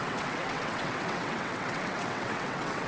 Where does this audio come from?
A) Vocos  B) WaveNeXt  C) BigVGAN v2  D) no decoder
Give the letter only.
B